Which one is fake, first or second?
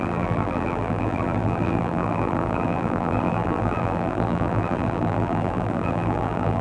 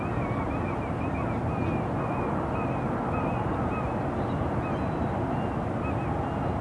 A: first